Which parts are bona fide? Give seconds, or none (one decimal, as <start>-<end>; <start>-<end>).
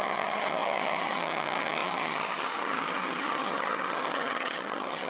none